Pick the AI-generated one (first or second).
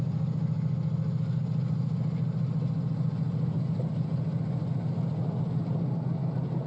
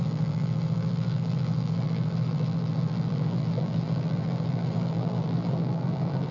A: second